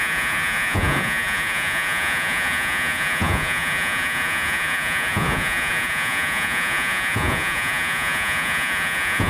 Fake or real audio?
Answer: fake